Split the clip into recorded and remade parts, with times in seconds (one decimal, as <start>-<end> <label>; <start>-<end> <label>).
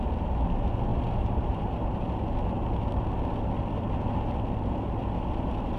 0.0-0.9 recorded; 0.9-1.8 remade; 1.8-5.8 recorded